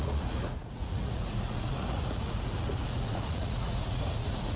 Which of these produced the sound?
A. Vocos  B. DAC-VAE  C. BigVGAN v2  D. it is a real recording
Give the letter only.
A